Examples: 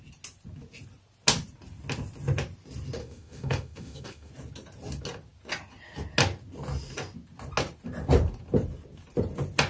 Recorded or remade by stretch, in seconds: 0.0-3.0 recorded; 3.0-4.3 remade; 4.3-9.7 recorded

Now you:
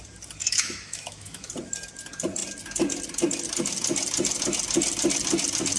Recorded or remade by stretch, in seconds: 0.0-0.4 recorded; 0.4-1.5 remade; 1.5-5.8 recorded

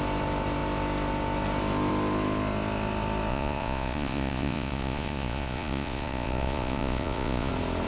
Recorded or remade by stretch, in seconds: 0.0-3.3 recorded; 3.3-7.5 remade; 7.5-7.9 recorded

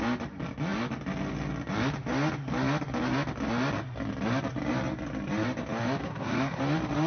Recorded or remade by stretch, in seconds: 0.0-6.0 recorded; 6.0-6.6 remade; 6.6-7.1 recorded

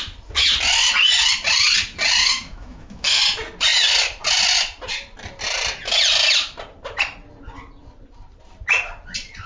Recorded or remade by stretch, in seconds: 0.0-2.2 recorded; 2.2-3.2 remade; 3.2-9.5 recorded

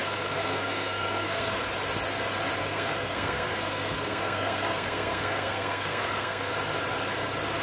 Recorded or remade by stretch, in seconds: 0.0-1.7 remade; 1.7-2.6 recorded; 2.6-6.5 remade; 6.5-7.6 recorded

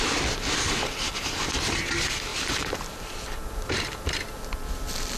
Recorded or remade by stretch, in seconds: 0.0-2.3 recorded; 2.3-4.4 remade; 4.4-5.2 recorded